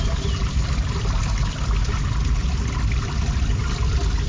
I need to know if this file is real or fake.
real